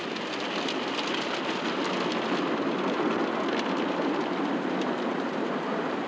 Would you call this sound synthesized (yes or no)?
no